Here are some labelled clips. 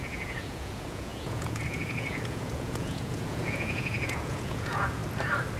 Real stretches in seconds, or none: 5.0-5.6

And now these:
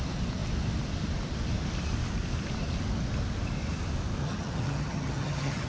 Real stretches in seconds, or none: 0.0-4.2

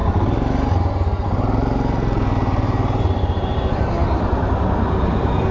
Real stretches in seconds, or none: 0.0-5.5

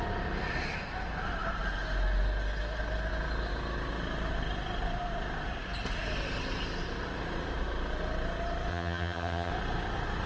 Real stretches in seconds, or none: 0.0-8.7; 9.5-10.3

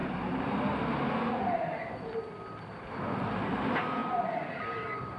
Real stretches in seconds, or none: 0.0-5.2

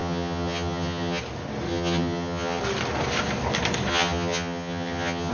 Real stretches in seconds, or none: 1.2-1.7; 2.6-3.9

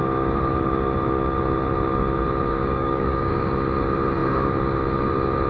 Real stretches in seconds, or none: 0.0-2.5; 3.3-5.5

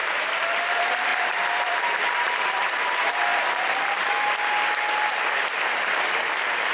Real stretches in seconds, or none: 3.3-6.3